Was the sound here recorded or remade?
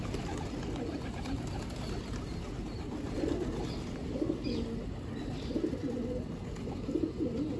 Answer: recorded